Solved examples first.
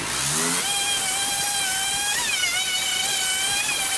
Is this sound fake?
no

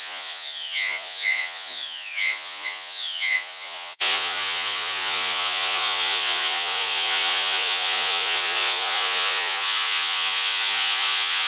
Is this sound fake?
yes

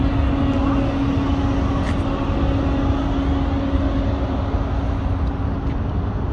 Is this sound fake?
no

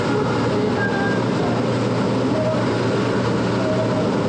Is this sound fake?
no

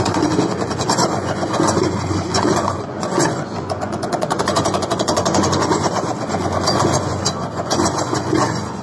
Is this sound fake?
yes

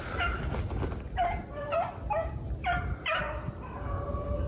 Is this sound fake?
no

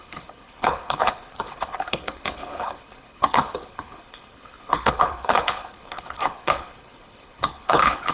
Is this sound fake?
yes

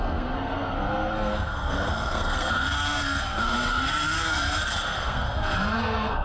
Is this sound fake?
yes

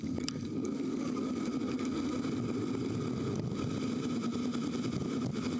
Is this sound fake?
no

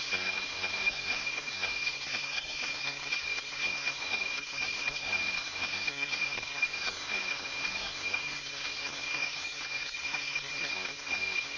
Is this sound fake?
yes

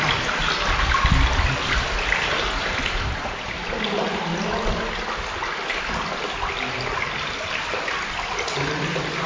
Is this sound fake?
no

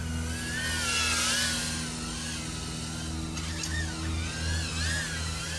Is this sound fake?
no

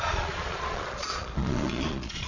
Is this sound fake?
yes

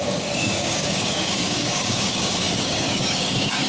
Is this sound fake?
yes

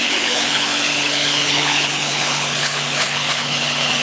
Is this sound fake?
yes